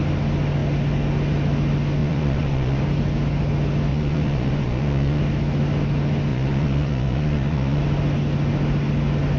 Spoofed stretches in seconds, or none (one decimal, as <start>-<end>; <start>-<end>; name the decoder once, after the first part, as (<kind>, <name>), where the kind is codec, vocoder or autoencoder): 2.0-2.8 (vocoder, Vocos); 3.9-5.2; 6.3-7.8